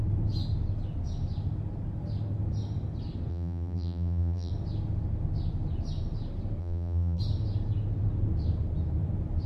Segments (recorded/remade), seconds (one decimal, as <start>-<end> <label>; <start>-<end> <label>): 0.0-3.3 recorded; 3.3-4.5 remade; 4.5-6.6 recorded; 6.6-7.2 remade; 7.2-9.5 recorded